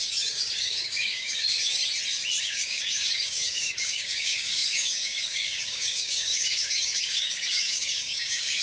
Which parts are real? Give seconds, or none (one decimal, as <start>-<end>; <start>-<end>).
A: 1.8-2.4